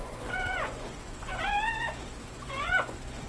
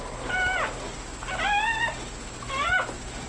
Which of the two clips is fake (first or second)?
first